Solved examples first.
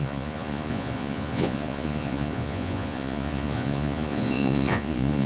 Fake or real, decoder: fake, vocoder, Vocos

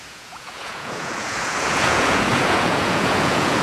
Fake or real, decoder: fake, vocoder, Vocos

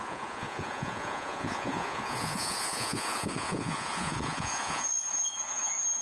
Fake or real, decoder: fake, vocoder, Vocos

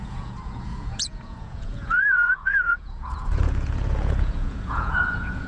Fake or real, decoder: fake, vocoder, Vocos